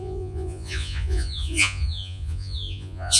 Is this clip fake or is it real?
fake